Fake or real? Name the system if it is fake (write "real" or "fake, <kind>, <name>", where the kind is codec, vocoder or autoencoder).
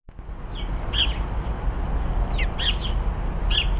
real